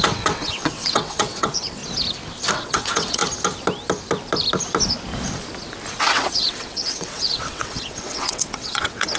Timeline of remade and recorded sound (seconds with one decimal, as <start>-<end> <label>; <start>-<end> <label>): 0.0-1.8 remade; 1.8-2.5 recorded; 2.5-3.2 remade; 3.2-6.0 recorded; 6.0-9.2 remade